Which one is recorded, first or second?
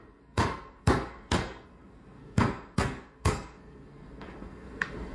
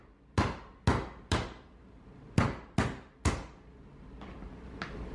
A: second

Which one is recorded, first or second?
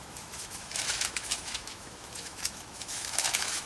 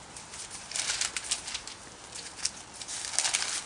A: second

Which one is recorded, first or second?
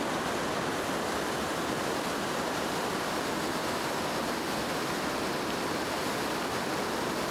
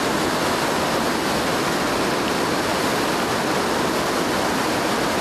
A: second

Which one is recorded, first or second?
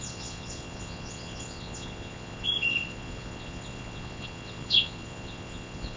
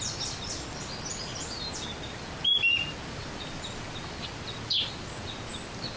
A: second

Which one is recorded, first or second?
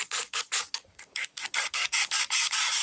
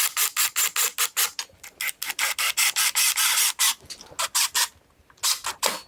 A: second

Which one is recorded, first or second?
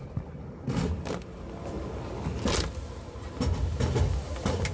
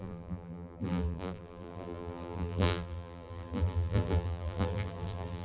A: first